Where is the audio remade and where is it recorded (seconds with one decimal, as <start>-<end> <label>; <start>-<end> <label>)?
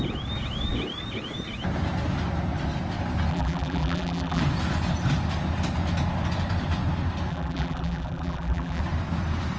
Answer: 0.0-3.3 recorded; 3.3-4.4 remade; 4.4-7.3 recorded; 7.3-8.8 remade; 8.8-9.6 recorded